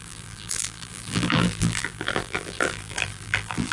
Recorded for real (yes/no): no